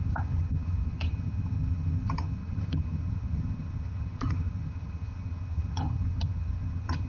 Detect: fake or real fake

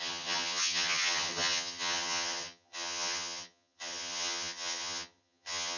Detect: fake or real fake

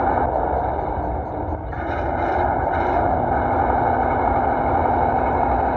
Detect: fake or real real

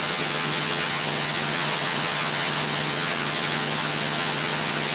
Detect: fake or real fake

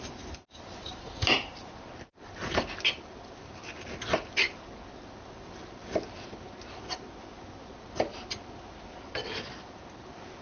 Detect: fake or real real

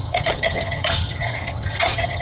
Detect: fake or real fake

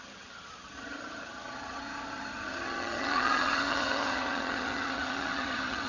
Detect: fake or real fake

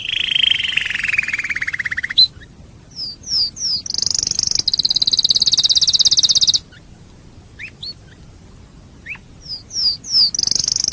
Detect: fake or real real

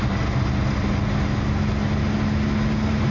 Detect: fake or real real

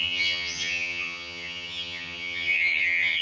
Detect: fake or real fake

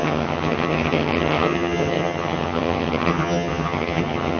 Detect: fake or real fake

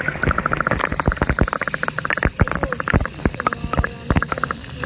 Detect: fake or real real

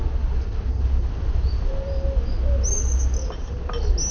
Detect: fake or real real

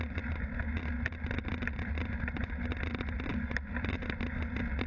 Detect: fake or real real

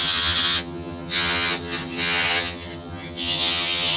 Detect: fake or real fake